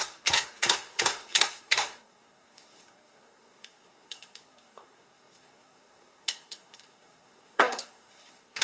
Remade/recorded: remade